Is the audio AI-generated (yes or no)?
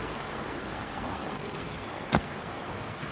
yes